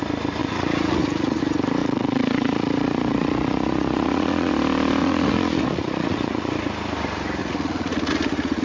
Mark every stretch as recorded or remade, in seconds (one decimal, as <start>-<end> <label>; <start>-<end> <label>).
0.0-0.4 recorded; 0.4-1.4 remade; 1.4-1.8 recorded; 1.8-4.5 remade; 4.5-5.0 recorded; 5.0-6.5 remade; 6.5-7.4 recorded; 7.4-8.6 remade